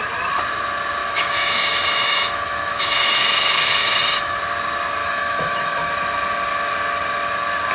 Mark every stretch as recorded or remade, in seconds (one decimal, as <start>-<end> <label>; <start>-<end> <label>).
0.0-1.0 recorded; 1.0-4.4 remade; 4.4-5.0 recorded; 5.0-5.9 remade; 5.9-7.7 recorded